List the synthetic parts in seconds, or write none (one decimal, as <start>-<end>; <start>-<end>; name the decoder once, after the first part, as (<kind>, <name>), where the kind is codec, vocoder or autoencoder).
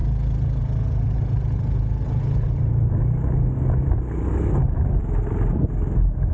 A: none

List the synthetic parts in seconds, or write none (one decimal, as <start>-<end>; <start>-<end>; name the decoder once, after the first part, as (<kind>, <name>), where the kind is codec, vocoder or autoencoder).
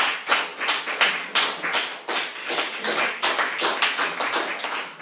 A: 2.4-4.2 (codec, DAC)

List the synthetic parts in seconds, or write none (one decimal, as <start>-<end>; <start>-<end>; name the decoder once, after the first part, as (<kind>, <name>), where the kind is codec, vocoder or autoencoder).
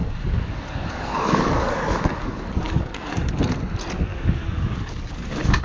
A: 0.0-3.4 (codec, DAC); 4.1-5.6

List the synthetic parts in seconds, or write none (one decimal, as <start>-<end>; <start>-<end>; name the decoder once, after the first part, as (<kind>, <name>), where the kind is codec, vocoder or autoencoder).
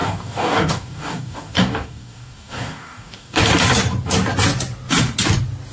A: 0.0-3.4 (codec, DAC)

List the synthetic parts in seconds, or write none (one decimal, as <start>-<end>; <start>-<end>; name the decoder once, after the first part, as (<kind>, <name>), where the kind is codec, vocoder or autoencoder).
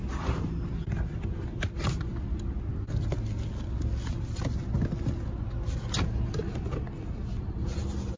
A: none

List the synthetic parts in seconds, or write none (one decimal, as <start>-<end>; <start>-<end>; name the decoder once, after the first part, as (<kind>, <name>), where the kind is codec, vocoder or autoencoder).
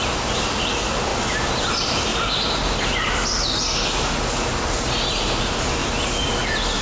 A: none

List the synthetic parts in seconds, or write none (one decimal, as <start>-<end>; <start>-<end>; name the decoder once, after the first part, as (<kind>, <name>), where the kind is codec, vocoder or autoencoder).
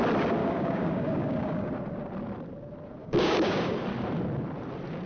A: 0.4-1.7 (codec, DAC); 3.0-3.8